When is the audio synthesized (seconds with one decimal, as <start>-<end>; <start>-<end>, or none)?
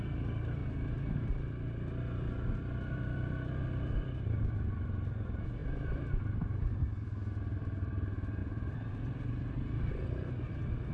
0.0-0.6; 2.9-10.9